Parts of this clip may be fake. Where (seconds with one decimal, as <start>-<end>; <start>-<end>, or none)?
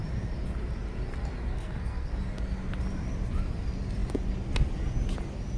1.5-2.1